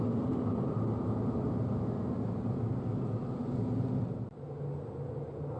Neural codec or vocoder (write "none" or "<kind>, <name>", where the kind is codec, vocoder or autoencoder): none